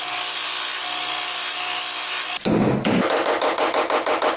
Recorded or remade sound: recorded